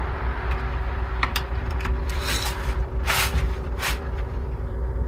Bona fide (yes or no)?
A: no